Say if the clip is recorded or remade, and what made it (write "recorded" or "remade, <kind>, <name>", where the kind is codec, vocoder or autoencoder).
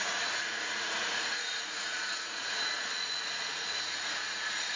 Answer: remade, vocoder, Vocos